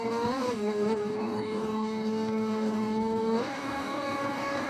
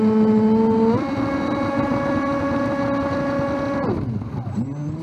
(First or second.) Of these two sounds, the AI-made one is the first